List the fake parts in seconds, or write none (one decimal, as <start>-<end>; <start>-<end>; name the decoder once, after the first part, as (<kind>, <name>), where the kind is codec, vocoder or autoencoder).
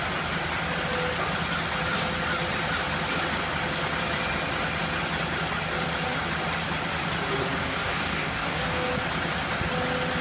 7.6-8.9 (codec, DAC)